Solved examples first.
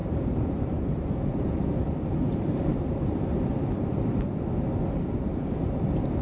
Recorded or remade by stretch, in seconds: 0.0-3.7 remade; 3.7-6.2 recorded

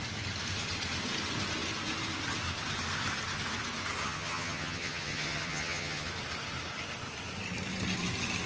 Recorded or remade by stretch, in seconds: 0.0-4.0 recorded; 4.0-6.1 remade; 6.1-8.5 recorded

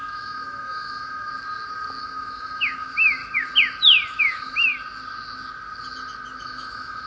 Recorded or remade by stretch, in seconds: 0.0-1.3 remade; 1.3-2.0 recorded; 2.0-3.2 remade; 3.2-4.2 recorded; 4.2-4.7 remade; 4.7-6.4 recorded; 6.4-7.1 remade

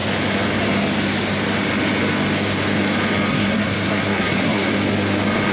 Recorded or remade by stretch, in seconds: 0.0-3.3 recorded; 3.3-4.7 remade; 4.7-5.5 recorded

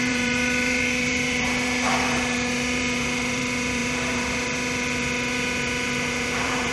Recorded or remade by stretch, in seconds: 0.0-6.7 remade